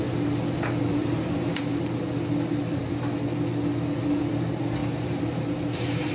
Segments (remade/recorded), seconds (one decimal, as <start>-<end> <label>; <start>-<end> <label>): 0.0-0.9 recorded; 0.9-2.0 remade; 2.0-4.8 recorded; 4.8-6.1 remade